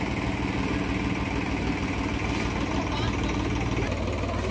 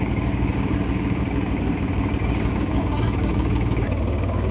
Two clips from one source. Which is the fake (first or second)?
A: second